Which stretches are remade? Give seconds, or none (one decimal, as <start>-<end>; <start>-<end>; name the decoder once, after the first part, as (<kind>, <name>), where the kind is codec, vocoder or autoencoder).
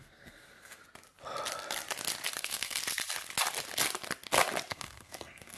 0.0-0.8 (codec, SNAC); 2.4-2.8; 4.7-5.6